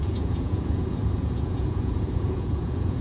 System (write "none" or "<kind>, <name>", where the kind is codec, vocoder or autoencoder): vocoder, Vocos